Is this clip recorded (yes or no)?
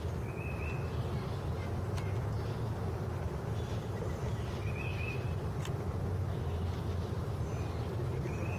yes